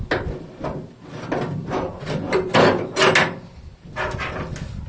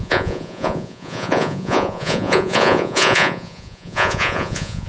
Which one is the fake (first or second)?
second